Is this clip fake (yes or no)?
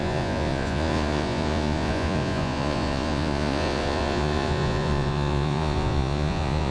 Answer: yes